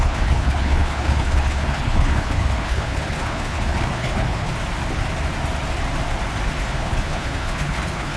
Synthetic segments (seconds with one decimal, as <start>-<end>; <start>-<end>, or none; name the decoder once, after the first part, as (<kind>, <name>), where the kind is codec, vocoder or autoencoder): 0.0-4.5 (codec, HILCodec); 6.7-8.2